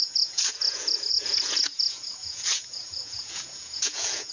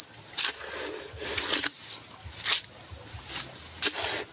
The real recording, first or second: second